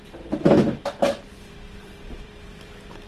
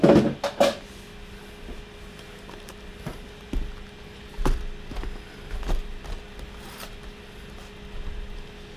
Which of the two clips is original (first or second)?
second